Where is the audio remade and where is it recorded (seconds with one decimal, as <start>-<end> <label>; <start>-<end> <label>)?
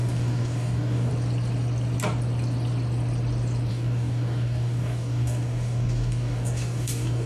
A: 0.0-1.1 remade; 1.1-3.7 recorded; 3.7-7.3 remade